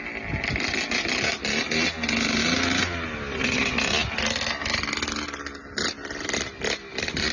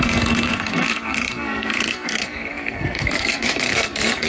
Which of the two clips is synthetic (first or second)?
second